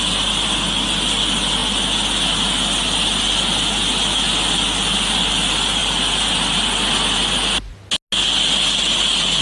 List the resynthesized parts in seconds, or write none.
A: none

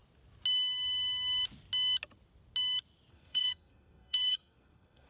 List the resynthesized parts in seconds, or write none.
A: 3.1-5.1 (codec, SNAC)

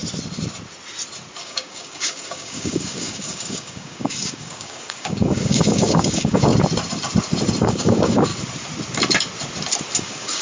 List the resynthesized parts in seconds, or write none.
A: 1.4-6.5 (codec, DAC); 7.6-8.3; 10.0-10.4

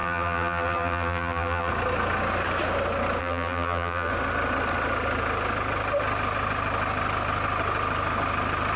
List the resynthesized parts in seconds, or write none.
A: 0.0-1.7 (vocoder, BigVGAN v2); 3.2-4.1

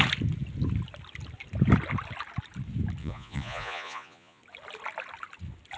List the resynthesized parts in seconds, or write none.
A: 3.0-4.4 (vocoder, Vocos)